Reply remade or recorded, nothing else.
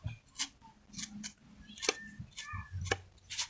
recorded